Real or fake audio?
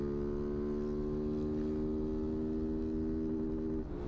real